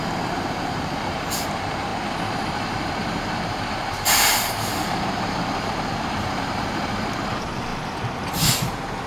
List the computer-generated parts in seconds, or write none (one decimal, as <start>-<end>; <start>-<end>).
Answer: 0.0-7.7; 8.3-9.1